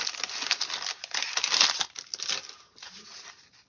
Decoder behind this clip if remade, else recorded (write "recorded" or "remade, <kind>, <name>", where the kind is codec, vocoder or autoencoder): recorded